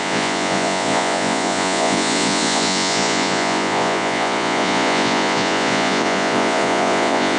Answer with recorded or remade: remade